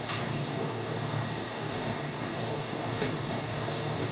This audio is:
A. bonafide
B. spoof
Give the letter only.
B